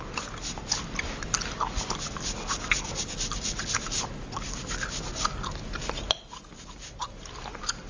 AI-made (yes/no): no